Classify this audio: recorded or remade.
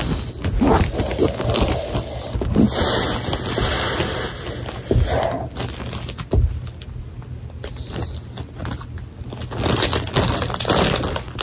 recorded